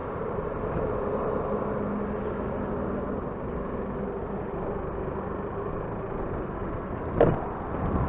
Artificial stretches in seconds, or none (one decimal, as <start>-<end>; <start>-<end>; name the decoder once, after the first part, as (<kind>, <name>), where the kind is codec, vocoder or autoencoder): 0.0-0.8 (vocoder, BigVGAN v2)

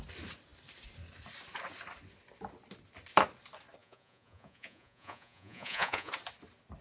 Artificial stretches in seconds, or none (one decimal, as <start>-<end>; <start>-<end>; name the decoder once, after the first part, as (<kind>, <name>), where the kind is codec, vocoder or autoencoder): 3.8-6.1 (vocoder, Vocos)

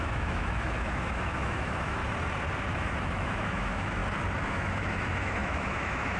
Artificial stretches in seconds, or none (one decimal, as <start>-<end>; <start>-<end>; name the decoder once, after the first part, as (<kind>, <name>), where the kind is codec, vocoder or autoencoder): 0.0-2.0 (autoencoder, DAC-VAE); 2.7-4.0; 4.5-6.2